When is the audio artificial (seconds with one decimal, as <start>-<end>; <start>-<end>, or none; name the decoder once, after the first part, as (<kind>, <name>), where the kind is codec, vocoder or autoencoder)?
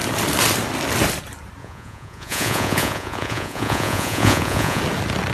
1.6-4.8 (vocoder, Vocos)